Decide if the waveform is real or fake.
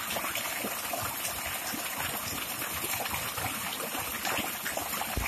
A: real